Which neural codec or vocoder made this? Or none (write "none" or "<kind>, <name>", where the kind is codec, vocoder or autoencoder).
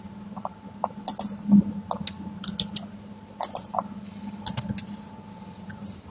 none